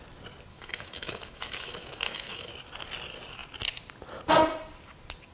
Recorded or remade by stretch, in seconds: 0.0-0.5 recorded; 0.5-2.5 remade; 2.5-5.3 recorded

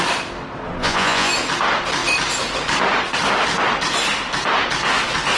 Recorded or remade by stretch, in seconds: 0.0-0.8 recorded; 0.8-1.3 remade; 1.3-5.4 recorded

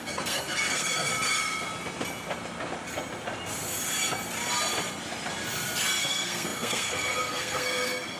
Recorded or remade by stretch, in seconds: 0.0-1.1 remade; 1.1-6.0 recorded; 6.0-8.2 remade